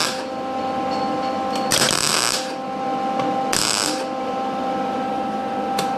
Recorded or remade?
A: recorded